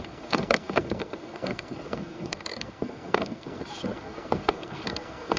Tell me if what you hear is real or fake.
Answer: fake